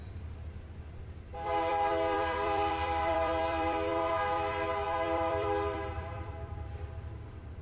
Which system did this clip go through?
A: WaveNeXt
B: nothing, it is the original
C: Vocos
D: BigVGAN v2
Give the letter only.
D